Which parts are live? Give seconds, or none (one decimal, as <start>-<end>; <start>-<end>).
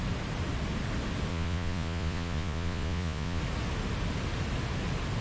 0.0-1.3; 3.4-5.2